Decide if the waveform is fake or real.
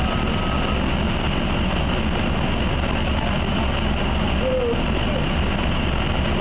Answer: real